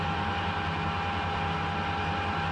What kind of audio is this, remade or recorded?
recorded